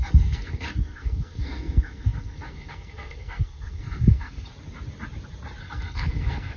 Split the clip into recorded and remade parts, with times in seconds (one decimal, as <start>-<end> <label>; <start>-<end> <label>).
0.0-4.5 remade; 4.5-5.6 recorded; 5.6-6.6 remade